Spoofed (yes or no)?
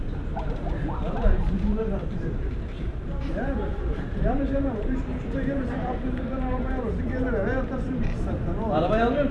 yes